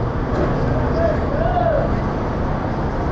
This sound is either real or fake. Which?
real